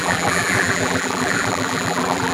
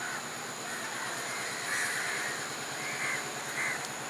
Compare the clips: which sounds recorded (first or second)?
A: second